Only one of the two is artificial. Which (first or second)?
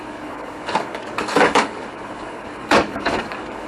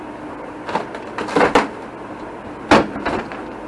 first